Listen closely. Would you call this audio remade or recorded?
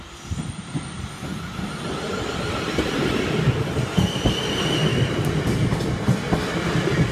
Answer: recorded